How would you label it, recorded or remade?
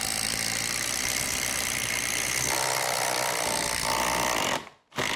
recorded